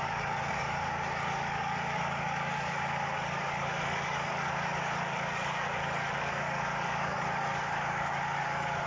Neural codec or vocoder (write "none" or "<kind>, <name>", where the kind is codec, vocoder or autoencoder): codec, DAC